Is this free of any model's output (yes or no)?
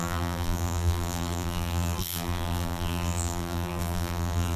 no